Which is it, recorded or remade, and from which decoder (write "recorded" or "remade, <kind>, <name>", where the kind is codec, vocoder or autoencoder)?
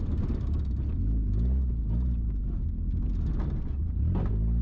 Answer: recorded